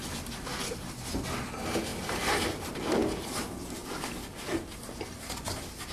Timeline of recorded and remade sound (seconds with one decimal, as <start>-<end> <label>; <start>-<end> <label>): 0.0-5.9 recorded